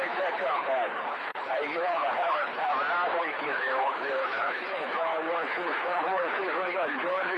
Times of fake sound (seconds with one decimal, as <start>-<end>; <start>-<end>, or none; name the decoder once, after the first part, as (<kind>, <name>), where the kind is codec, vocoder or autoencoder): 0.0-2.7 (codec, HILCodec); 3.2-7.4